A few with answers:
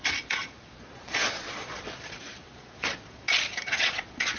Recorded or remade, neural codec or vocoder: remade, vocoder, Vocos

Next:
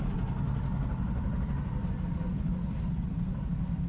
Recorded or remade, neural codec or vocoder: recorded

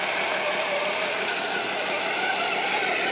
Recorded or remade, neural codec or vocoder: recorded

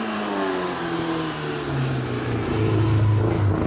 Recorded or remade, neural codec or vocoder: recorded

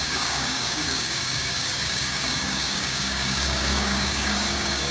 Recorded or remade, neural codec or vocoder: remade, codec, DAC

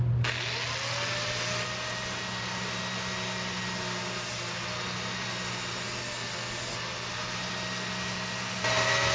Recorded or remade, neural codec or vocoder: recorded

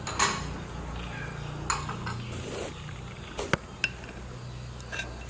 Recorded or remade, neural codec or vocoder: recorded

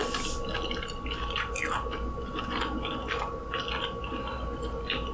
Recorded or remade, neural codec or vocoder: recorded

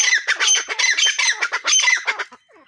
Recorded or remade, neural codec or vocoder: recorded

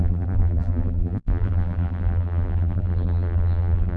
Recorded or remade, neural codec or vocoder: remade, vocoder, BigVGAN v2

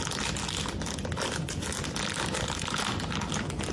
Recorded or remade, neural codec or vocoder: recorded